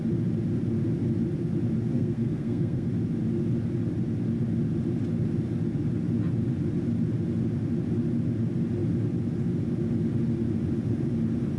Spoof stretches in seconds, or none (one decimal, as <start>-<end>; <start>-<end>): 1.9-2.9